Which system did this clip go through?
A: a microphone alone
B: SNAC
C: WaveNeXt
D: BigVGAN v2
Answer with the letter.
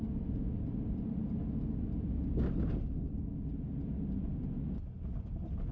A